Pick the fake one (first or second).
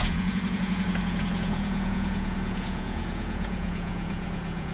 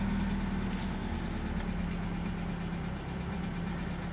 first